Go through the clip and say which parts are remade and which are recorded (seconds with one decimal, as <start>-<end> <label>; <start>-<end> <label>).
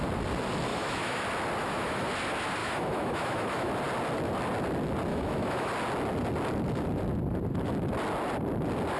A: 0.0-0.7 recorded; 0.7-1.2 remade; 1.2-1.6 recorded; 1.6-2.1 remade; 2.1-2.6 recorded; 2.6-3.7 remade; 3.7-5.1 recorded; 5.1-5.7 remade; 5.7-9.0 recorded